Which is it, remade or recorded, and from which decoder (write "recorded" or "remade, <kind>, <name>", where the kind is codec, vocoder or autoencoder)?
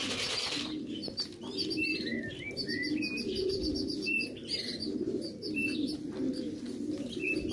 recorded